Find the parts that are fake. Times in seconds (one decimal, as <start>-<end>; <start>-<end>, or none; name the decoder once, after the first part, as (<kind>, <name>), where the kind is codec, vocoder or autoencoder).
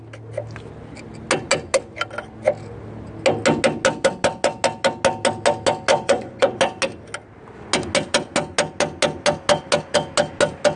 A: 5.9-6.6 (vocoder, Vocos)